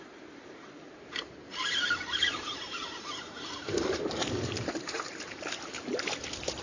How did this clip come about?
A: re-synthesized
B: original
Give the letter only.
A